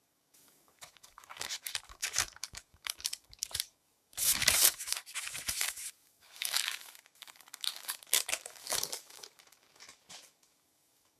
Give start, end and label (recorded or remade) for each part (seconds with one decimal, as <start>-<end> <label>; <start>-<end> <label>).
0.0-11.2 remade